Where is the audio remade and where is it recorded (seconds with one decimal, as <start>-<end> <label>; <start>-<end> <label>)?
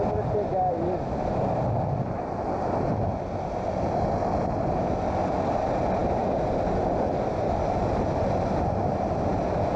0.0-6.0 recorded; 6.0-9.3 remade; 9.3-9.8 recorded